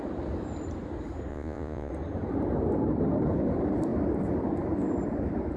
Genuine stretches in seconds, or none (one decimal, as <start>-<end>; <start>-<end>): 0.0-1.3; 1.9-5.6